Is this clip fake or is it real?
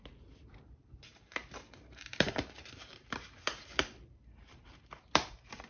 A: fake